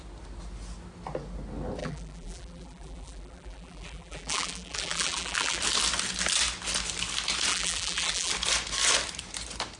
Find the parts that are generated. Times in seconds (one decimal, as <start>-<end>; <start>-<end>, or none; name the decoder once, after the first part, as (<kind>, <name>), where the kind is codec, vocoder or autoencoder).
1.8-5.6 (vocoder, BigVGAN v2); 7.5-8.3

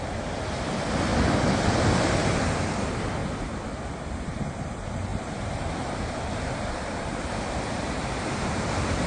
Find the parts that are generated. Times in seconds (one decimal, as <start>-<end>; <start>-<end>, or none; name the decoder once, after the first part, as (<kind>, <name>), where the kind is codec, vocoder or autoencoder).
0.0-1.1 (vocoder, BigVGAN v2); 1.8-3.2; 4.2-9.1

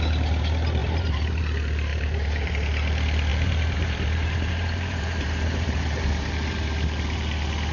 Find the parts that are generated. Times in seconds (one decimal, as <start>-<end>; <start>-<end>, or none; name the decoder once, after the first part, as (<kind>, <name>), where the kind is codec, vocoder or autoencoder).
0.8-1.4 (vocoder, BigVGAN v2); 1.9-2.5; 3.3-6.6

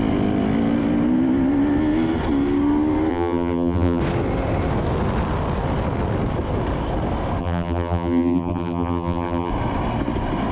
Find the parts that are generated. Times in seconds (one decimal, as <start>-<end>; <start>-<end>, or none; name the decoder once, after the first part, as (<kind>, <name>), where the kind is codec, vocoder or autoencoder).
3.1-4.0 (vocoder, BigVGAN v2); 7.4-9.5

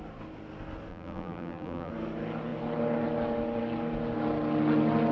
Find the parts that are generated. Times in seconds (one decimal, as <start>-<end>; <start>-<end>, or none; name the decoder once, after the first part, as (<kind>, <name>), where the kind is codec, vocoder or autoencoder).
0.9-1.9 (vocoder, BigVGAN v2)

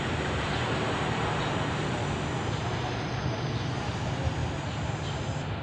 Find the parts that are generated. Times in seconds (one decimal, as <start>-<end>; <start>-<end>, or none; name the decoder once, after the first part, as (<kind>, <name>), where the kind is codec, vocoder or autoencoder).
0.0-5.6 (vocoder, BigVGAN v2)

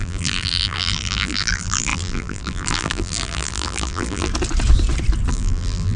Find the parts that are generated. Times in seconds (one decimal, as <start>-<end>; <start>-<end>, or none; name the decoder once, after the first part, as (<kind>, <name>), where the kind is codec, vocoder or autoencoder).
0.0-4.3 (vocoder, BigVGAN v2); 5.3-6.0